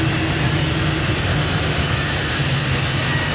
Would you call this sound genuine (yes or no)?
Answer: yes